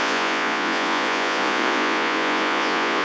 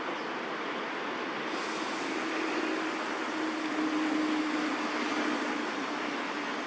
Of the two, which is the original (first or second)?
second